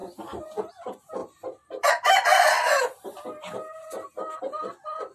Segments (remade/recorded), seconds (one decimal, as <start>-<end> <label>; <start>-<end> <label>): 0.0-0.7 recorded; 0.7-5.1 remade

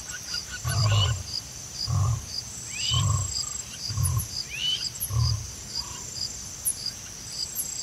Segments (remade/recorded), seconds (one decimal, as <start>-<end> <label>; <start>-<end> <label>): 0.0-7.8 remade

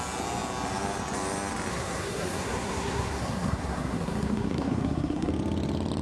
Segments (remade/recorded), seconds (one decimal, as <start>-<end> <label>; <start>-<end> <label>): 0.0-1.7 recorded; 1.7-5.3 remade; 5.3-6.0 recorded

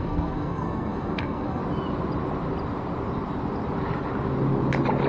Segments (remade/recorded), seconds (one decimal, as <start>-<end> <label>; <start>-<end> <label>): 0.0-1.6 remade; 1.6-5.1 recorded

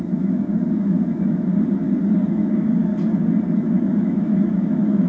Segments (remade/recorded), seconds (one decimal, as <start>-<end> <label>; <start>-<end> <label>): 0.0-1.5 remade; 1.5-2.3 recorded; 2.3-2.9 remade; 2.9-3.5 recorded; 3.5-5.1 remade

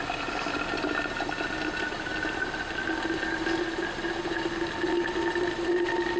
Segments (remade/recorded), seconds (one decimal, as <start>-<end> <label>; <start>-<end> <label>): 0.0-6.2 recorded